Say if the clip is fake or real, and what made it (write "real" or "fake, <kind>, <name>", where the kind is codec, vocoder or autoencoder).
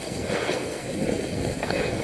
fake, codec, SNAC